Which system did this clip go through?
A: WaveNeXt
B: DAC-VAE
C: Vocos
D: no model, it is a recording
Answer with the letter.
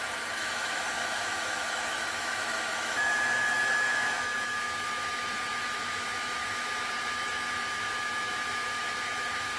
B